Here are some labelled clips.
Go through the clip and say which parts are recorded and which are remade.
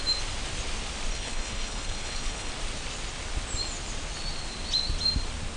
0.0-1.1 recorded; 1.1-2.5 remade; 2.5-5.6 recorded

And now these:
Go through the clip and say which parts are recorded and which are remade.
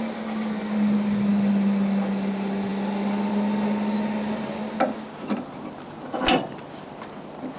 0.0-7.6 recorded